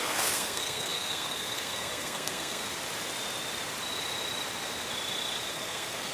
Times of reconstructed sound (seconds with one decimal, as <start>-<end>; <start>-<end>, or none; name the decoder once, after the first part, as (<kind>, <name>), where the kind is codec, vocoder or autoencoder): 0.0-2.6 (codec, SNAC); 5.5-6.1